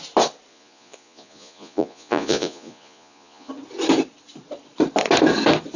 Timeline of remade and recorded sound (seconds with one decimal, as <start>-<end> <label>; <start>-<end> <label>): 0.0-0.5 recorded; 0.5-3.5 remade; 3.5-5.8 recorded